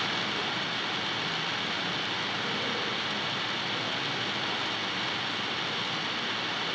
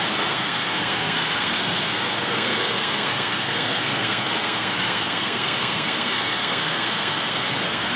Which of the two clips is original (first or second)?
first